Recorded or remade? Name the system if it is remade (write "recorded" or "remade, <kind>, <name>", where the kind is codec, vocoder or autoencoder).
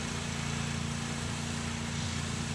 remade, vocoder, BigVGAN v2